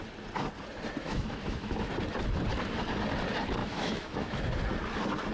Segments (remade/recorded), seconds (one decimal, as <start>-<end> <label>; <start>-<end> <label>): 0.0-1.0 recorded; 1.0-1.9 remade; 1.9-3.6 recorded; 3.6-4.5 remade; 4.5-5.3 recorded